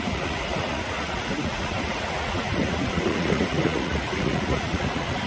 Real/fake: fake